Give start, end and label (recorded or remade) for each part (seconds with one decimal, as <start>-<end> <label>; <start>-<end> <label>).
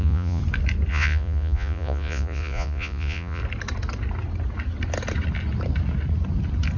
0.0-0.4 remade; 0.4-0.9 recorded; 0.9-3.4 remade; 3.4-6.8 recorded